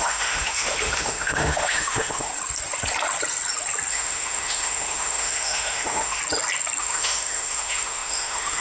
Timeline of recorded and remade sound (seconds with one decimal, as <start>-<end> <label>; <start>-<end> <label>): 0.0-2.3 remade; 2.3-3.9 recorded; 3.9-6.2 remade; 6.2-6.8 recorded; 6.8-8.6 remade